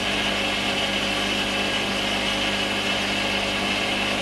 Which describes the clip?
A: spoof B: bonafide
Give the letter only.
B